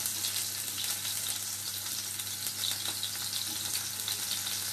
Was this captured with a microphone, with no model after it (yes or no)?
yes